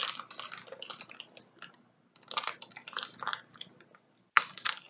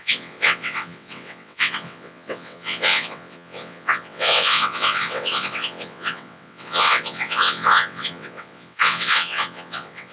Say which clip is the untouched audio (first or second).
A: first